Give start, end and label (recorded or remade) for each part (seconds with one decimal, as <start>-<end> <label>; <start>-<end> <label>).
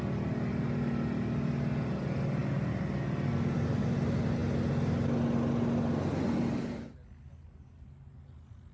0.0-8.7 recorded